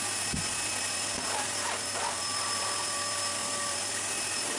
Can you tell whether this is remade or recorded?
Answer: remade